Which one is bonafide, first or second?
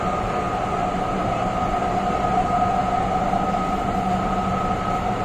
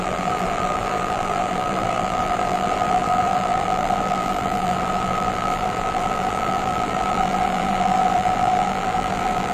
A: first